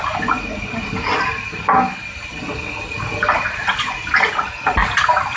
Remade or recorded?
recorded